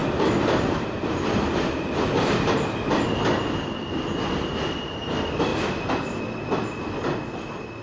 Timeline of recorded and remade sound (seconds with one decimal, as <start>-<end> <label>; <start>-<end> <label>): 0.0-2.8 remade; 2.8-5.5 recorded; 5.5-6.2 remade; 6.2-7.8 recorded